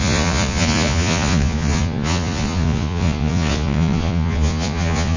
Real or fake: fake